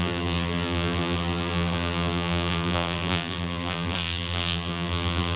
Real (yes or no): no